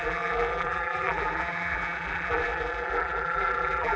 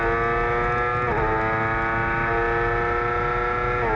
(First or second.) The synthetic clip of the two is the first